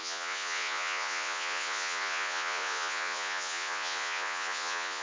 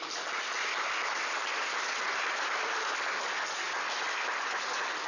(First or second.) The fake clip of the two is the first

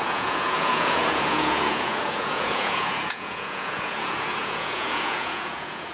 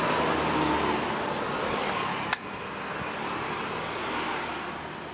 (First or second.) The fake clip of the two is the first